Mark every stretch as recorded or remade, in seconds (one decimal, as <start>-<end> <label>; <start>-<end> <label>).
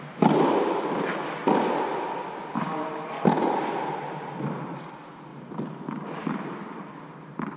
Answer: 0.0-7.6 recorded